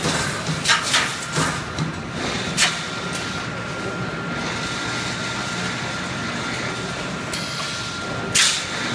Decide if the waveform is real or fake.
real